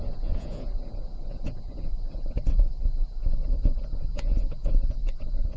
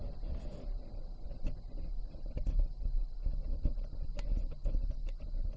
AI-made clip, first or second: first